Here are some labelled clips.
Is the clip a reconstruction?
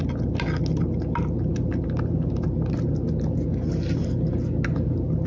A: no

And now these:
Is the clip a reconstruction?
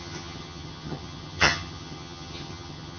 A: yes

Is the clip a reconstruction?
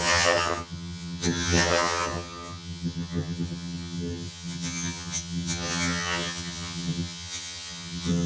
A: yes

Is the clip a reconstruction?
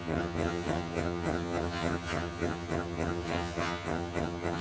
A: yes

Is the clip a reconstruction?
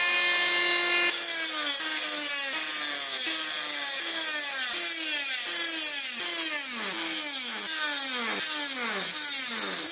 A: no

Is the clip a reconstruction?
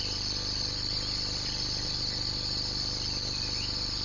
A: no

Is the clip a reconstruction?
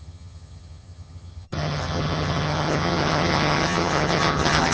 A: yes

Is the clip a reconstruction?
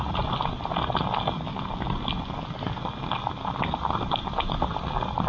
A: no